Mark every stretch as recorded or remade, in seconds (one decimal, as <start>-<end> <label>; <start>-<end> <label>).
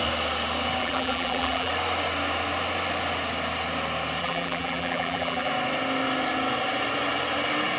0.0-0.8 recorded; 0.8-1.7 remade; 1.7-4.2 recorded; 4.2-5.5 remade; 5.5-7.8 recorded